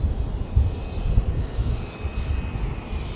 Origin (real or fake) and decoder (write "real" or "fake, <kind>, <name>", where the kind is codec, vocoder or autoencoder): real